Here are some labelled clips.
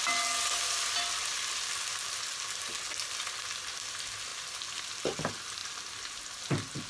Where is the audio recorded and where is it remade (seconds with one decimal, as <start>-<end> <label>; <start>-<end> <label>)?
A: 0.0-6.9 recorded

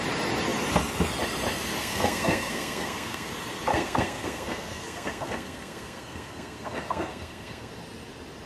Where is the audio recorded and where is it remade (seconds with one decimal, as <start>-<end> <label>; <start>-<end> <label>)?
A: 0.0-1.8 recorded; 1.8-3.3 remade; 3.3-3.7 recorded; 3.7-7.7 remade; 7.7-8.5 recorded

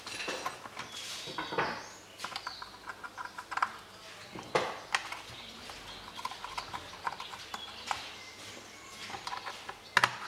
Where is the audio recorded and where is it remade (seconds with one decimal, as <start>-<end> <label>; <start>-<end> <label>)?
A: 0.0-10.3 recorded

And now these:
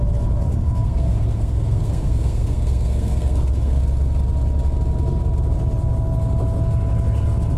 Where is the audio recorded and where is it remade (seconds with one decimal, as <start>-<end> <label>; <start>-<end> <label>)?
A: 0.0-0.5 recorded; 0.5-3.8 remade; 3.8-7.6 recorded

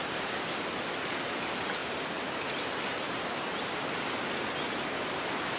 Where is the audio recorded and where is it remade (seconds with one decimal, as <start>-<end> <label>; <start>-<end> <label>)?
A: 0.0-5.6 recorded

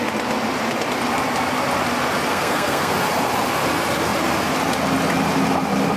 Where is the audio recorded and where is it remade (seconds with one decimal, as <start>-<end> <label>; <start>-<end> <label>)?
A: 0.0-2.3 recorded; 2.3-2.9 remade; 2.9-6.0 recorded